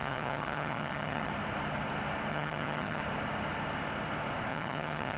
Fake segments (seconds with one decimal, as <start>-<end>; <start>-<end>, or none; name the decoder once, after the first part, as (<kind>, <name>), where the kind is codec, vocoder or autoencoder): 0.0-1.3 (vocoder, HiFi-GAN); 2.3-3.0; 4.5-5.2

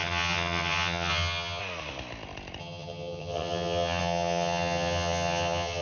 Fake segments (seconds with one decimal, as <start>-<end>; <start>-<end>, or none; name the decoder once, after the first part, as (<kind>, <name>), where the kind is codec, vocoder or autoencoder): 0.0-1.6 (vocoder, HiFi-GAN); 2.6-5.8

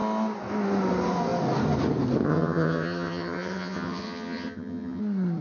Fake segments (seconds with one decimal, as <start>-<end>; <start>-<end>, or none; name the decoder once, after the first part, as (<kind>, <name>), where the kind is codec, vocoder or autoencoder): 2.3-5.0 (vocoder, HiFi-GAN)

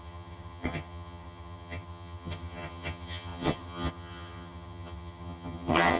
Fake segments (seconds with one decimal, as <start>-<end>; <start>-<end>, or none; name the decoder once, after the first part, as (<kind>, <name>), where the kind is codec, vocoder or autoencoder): 0.0-6.0 (vocoder, HiFi-GAN)